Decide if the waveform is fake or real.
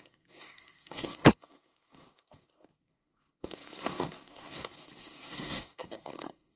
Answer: fake